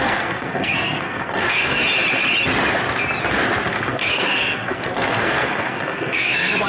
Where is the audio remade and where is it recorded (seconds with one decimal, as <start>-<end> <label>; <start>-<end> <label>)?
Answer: 0.0-1.8 remade; 1.8-3.7 recorded; 3.7-6.7 remade